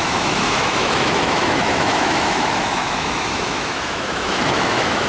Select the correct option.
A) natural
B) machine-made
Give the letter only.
B